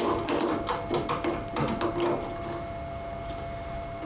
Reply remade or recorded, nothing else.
recorded